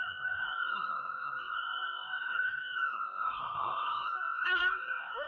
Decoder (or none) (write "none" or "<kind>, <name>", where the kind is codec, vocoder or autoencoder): codec, SNAC